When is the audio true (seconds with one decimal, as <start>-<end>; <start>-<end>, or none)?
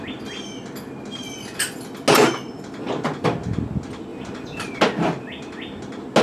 0.0-4.1; 4.8-6.2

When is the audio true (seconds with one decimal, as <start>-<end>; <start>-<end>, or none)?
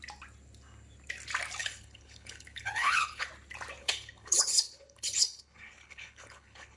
0.0-1.6; 3.3-3.8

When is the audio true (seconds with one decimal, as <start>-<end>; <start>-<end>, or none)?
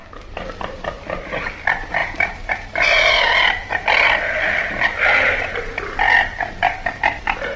0.0-2.0; 3.1-7.6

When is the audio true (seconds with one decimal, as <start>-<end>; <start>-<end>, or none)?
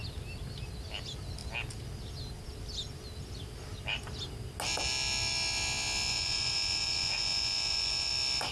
0.0-6.1; 8.1-8.5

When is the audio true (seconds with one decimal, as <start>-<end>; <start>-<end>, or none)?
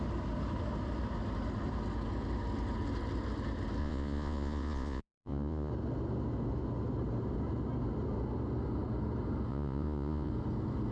0.0-3.8; 5.7-9.5; 10.3-10.9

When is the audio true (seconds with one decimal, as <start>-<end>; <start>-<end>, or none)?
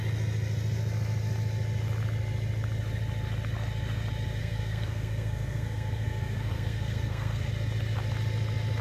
0.0-4.4; 7.5-8.8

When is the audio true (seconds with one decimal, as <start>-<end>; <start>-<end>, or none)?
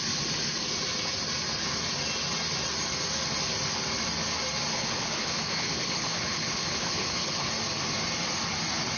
0.0-4.7; 7.5-9.0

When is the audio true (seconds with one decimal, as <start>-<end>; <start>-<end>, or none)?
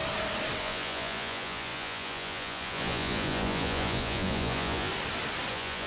0.0-0.6; 4.9-5.5